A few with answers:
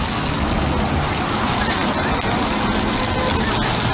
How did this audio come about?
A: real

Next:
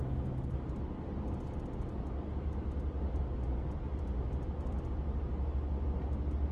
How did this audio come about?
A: real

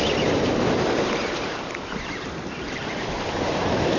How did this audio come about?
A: real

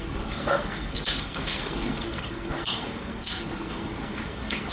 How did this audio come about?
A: fake